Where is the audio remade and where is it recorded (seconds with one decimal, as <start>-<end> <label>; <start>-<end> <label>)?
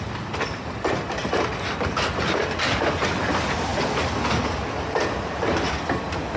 0.0-6.4 recorded